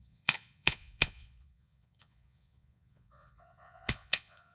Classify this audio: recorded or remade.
remade